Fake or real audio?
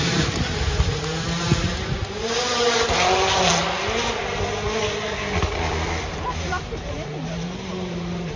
real